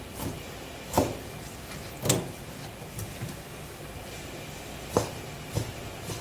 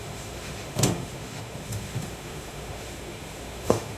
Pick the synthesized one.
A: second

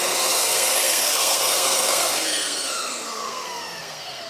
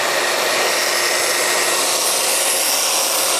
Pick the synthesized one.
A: first